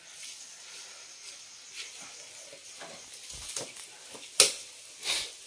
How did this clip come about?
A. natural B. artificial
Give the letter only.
A